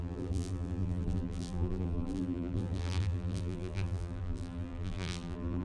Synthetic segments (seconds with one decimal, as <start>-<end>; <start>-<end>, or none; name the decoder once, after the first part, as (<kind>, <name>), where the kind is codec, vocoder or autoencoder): 0.0-5.6 (vocoder, BigVGAN v2)